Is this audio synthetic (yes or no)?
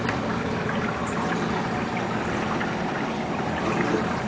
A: no